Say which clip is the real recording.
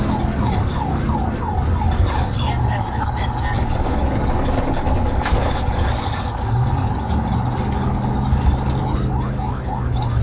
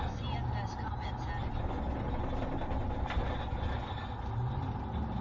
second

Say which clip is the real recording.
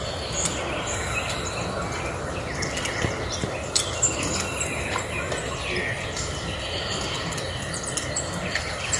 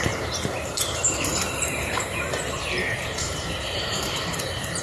first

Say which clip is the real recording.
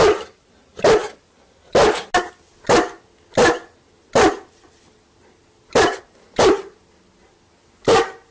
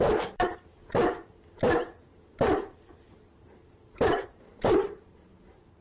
first